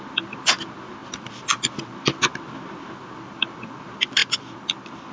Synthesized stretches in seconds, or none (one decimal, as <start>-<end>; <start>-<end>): none